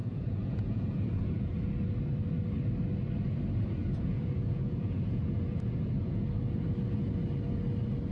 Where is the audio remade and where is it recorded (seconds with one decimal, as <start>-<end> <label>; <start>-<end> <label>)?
0.0-1.7 remade; 1.7-3.8 recorded; 3.8-6.2 remade; 6.2-8.1 recorded